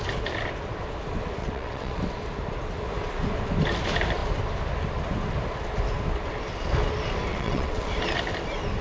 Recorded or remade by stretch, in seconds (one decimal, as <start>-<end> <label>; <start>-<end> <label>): 0.0-1.4 recorded; 1.4-2.0 remade; 2.0-7.3 recorded; 7.3-7.9 remade; 7.9-8.8 recorded